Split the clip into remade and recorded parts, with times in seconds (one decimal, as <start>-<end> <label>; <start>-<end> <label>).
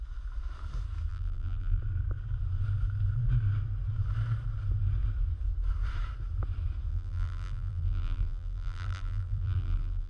0.0-1.1 recorded; 1.1-1.8 remade; 1.8-6.9 recorded; 6.9-10.1 remade